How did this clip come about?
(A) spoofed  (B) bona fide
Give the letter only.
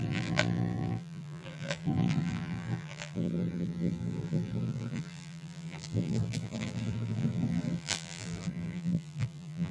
A